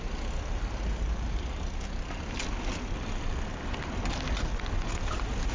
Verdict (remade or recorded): recorded